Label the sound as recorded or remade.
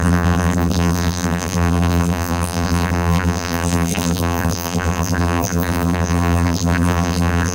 remade